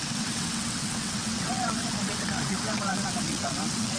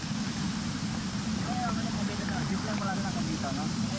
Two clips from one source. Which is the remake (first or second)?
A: first